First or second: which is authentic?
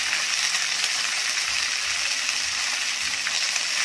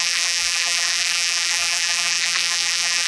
first